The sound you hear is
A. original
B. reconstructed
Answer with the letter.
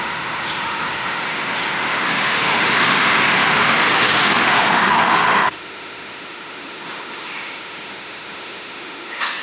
B